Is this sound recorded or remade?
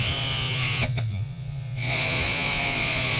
remade